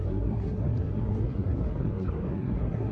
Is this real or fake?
fake